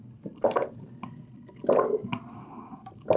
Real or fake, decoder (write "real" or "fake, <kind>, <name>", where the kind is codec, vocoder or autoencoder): real